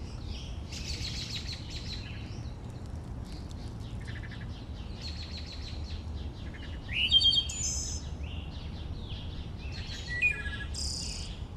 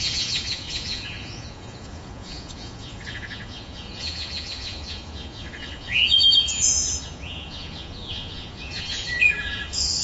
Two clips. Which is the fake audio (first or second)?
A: second